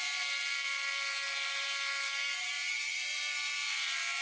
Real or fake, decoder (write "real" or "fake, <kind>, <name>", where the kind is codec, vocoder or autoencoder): fake, vocoder, BigVGAN v2